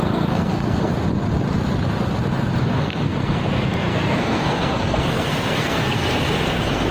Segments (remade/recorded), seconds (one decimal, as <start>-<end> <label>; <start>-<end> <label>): 0.0-0.9 remade; 0.9-2.6 recorded; 2.6-6.9 remade